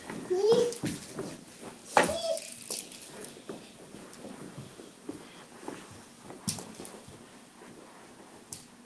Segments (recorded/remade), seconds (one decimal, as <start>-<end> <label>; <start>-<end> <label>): 0.0-8.9 recorded